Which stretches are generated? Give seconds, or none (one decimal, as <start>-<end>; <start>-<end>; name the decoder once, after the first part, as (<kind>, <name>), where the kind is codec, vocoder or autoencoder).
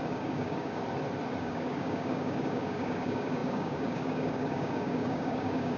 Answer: 0.0-0.8 (codec, DAC); 1.4-5.8